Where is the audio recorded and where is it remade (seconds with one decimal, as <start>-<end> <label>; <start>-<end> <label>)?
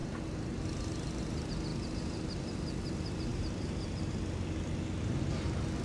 0.0-5.8 recorded